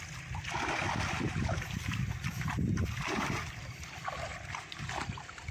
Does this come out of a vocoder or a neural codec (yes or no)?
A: no